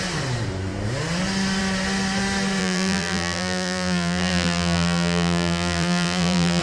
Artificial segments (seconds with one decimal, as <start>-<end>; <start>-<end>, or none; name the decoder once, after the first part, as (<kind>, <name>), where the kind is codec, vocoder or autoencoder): 2.6-6.6 (vocoder, BigVGAN v2)

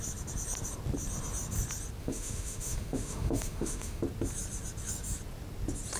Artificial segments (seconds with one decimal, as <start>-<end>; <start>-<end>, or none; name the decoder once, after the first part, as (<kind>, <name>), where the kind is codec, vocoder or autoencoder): 2.0-4.0 (autoencoder, DAC-VAE)

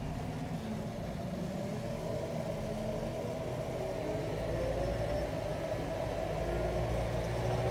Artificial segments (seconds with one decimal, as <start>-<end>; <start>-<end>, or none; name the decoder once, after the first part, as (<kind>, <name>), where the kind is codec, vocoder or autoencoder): none

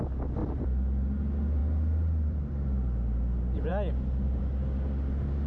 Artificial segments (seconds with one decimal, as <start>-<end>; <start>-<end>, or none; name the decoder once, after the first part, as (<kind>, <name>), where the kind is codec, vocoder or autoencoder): 0.4-1.2 (vocoder, BigVGAN v2); 1.6-2.5; 3.7-4.4

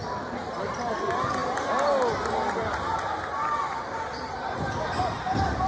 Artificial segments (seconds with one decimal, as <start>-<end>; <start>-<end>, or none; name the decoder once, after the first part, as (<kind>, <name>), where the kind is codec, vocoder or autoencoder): none

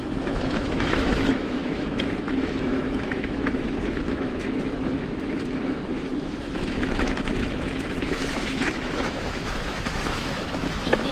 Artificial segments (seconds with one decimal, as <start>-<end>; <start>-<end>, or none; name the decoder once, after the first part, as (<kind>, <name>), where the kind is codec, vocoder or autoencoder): 0.0-11.1 (autoencoder, DAC-VAE)

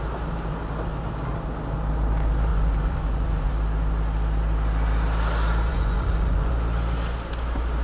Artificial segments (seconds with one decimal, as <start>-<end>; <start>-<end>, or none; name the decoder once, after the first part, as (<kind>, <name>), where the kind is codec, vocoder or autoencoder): 2.5-3.5 (vocoder, Vocos); 5.7-6.5

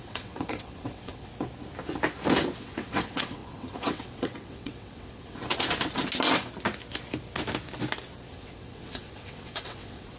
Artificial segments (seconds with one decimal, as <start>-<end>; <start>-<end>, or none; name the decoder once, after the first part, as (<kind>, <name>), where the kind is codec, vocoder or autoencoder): 0.0-1.3 (vocoder, WaveNeXt); 2.6-5.4; 8.3-10.2